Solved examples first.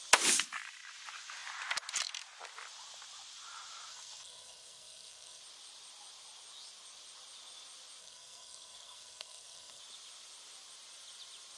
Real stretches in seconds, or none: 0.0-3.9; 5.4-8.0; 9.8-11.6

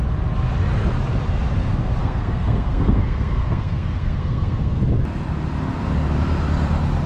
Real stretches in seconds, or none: 0.0-2.0; 4.8-7.1

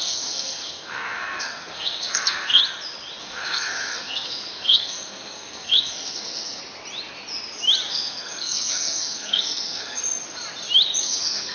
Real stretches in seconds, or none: 2.6-3.2; 6.6-7.9; 10.0-11.0

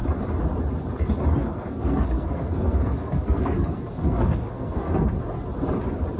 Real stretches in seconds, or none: 0.0-1.4; 5.1-6.2

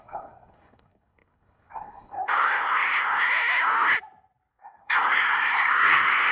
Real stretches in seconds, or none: 3.3-4.5

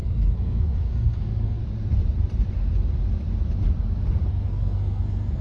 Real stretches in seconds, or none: 1.6-4.3

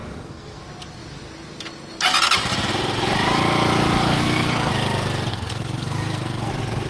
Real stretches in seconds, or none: 0.6-4.0; 4.7-5.3; 6.5-6.9